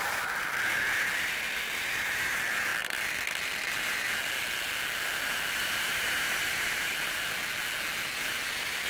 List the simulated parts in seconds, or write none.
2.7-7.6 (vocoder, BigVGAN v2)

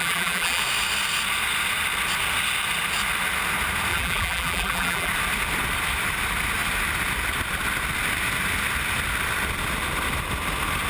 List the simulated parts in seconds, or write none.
0.0-0.6 (vocoder, BigVGAN v2); 3.9-5.1